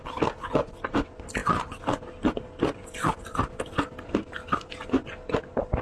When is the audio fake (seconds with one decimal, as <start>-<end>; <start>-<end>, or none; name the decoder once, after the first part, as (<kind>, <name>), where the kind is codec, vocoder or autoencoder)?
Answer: none